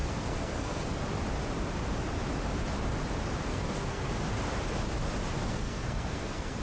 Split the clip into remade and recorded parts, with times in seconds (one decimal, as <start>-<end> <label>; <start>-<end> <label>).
0.0-1.0 remade; 1.0-3.5 recorded; 3.5-4.1 remade; 4.1-5.4 recorded; 5.4-6.6 remade